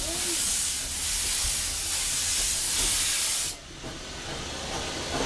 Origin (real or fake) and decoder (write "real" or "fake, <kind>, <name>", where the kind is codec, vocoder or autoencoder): real